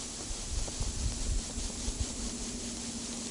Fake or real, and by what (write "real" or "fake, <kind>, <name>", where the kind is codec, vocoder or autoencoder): fake, vocoder, BigVGAN v2